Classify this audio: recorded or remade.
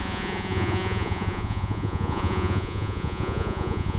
remade